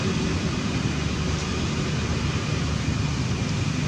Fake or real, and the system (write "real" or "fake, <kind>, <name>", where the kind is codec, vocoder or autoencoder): real